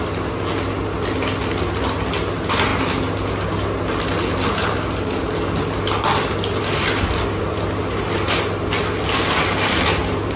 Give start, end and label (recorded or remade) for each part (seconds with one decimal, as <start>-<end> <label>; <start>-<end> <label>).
0.0-10.4 recorded